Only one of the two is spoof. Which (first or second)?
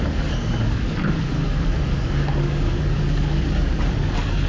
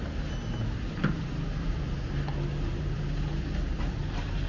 first